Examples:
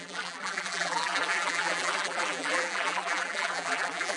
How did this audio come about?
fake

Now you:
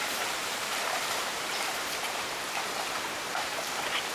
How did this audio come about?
fake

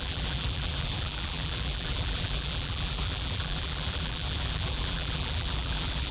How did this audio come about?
fake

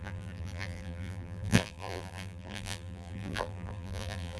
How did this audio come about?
fake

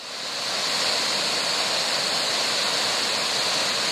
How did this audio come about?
real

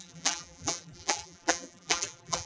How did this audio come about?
fake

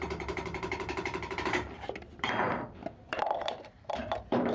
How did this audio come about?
fake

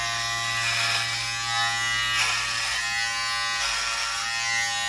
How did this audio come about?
real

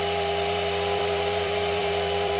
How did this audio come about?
fake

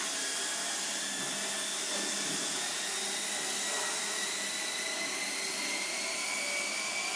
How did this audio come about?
real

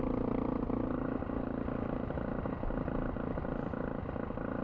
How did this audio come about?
real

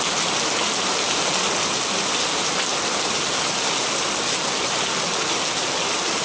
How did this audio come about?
real